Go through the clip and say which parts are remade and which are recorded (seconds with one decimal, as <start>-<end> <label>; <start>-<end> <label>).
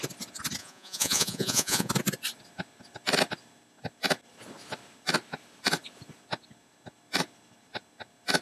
0.0-0.6 recorded; 0.6-1.9 remade; 1.9-8.4 recorded